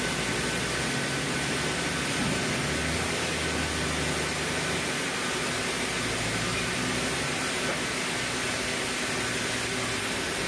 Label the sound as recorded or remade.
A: recorded